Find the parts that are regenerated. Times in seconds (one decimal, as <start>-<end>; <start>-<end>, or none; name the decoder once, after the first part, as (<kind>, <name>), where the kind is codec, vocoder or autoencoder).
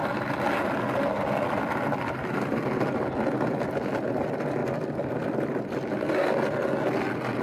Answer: none